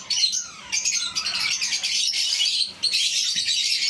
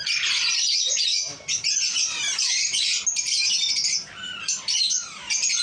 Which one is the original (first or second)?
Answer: second